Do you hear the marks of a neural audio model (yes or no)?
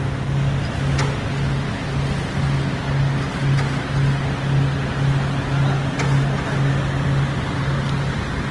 no